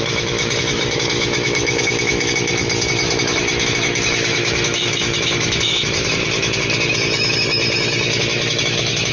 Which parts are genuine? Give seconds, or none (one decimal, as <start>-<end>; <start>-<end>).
none